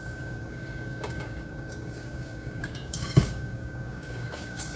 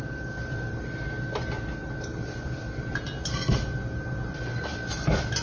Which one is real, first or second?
second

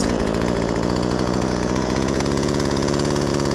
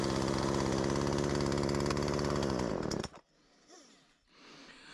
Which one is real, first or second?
second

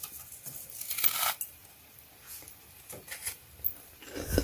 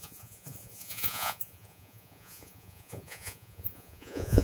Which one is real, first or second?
first